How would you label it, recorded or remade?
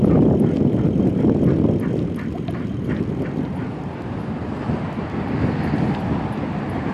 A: recorded